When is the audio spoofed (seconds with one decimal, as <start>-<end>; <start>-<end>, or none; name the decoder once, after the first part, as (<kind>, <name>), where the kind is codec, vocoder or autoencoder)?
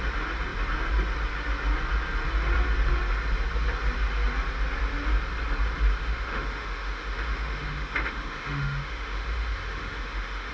6.0-10.5 (autoencoder, DAC-VAE)